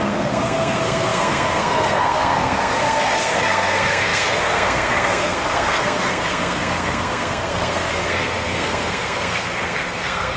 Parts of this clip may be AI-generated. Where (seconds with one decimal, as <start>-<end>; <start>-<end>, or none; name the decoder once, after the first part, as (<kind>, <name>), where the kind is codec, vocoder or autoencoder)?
0.0-10.4 (codec, SNAC)